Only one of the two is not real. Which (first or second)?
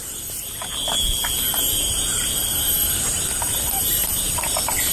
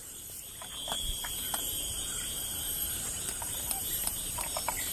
second